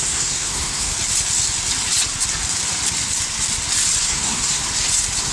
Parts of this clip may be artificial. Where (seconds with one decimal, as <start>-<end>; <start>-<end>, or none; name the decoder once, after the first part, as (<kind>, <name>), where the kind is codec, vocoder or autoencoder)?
0.0-0.9 (codec, SNAC); 4.0-4.6